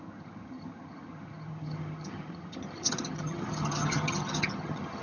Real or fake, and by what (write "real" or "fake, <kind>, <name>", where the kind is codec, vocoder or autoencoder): fake, vocoder, HiFi-GAN